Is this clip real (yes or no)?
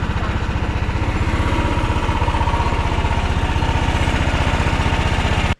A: yes